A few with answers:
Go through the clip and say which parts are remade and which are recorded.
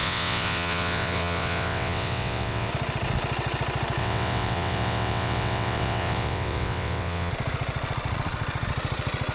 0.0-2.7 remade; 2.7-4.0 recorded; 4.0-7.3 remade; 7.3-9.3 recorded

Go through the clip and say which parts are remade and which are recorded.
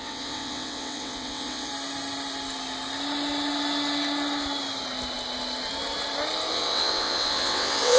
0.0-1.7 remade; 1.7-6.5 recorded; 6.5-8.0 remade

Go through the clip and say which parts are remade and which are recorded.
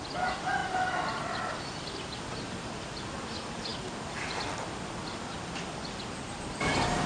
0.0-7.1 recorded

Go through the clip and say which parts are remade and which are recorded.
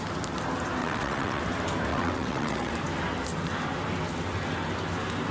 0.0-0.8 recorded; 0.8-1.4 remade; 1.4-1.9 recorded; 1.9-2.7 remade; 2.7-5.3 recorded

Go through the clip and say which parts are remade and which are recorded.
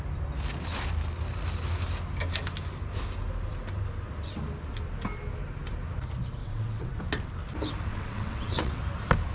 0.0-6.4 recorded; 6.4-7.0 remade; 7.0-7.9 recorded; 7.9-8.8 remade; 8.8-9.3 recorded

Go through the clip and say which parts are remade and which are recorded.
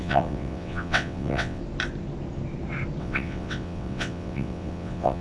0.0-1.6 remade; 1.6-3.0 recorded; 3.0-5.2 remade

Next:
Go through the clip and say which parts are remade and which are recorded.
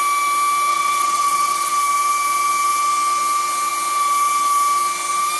0.0-0.7 recorded; 0.7-1.7 remade; 1.7-5.4 recorded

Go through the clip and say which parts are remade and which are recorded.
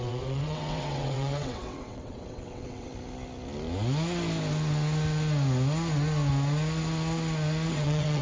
0.0-2.9 remade; 2.9-7.7 recorded; 7.7-8.2 remade